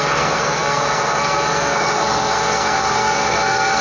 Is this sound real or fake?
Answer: fake